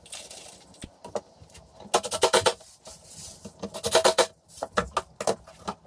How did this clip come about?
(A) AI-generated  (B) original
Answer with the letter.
B